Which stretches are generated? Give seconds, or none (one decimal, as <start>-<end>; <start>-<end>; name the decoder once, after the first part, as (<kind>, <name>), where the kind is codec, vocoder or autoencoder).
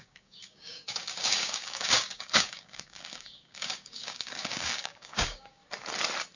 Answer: 0.0-5.6 (codec, DAC)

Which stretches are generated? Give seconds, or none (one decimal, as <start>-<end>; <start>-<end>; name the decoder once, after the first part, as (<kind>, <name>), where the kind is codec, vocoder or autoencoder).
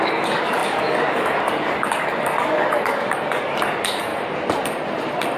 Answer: 0.0-4.1 (codec, DAC)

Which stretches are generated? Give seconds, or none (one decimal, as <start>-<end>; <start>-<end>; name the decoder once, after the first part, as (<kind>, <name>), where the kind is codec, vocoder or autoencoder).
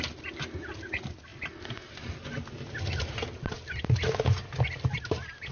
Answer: none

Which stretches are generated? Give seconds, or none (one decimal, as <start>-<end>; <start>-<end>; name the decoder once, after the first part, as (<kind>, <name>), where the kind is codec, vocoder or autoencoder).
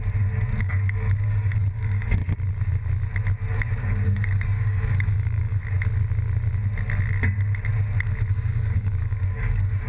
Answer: 0.6-2.2 (codec, DAC); 3.8-5.6; 8.3-9.9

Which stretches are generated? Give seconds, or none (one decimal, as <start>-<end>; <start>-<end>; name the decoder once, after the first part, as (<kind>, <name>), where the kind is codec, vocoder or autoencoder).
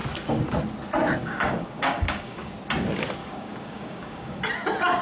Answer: 1.2-2.5 (codec, DAC); 3.2-4.4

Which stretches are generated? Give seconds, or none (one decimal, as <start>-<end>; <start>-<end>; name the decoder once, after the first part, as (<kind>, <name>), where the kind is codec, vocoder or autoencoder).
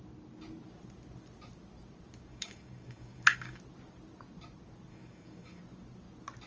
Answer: 2.3-3.6 (codec, DAC); 4.9-5.6